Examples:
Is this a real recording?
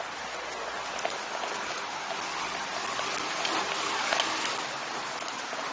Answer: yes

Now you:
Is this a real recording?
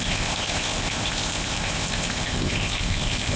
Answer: no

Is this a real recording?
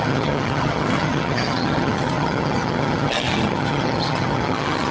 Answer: no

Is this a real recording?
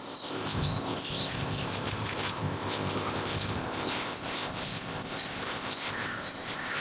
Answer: no